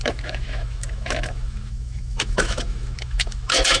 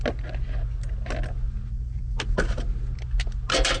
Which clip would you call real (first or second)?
second